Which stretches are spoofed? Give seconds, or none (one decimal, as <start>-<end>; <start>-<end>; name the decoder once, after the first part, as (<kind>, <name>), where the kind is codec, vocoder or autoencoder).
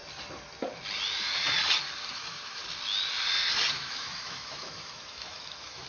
2.1-2.6 (autoencoder, DAC-VAE); 3.7-5.9